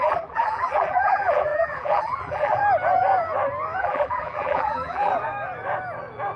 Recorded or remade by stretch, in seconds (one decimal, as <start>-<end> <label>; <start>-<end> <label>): 0.0-2.6 remade; 2.6-3.8 recorded; 3.8-5.1 remade; 5.1-6.4 recorded